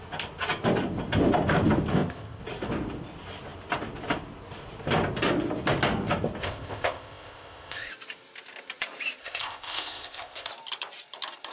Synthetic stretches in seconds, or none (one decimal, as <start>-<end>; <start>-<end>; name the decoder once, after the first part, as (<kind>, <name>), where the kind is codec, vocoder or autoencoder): 1.9-2.4 (codec, ZipCodec); 6.4-7.9; 9.2-10.5